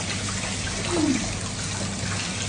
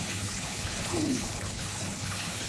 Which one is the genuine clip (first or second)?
first